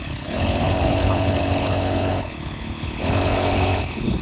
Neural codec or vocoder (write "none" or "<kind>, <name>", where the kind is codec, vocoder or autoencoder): codec, HILCodec